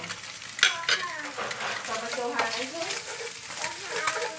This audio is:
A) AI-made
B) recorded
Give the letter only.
B